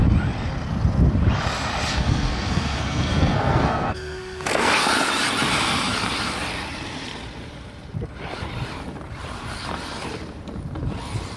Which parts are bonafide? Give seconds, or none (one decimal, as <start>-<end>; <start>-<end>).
0.0-1.9; 4.8-11.4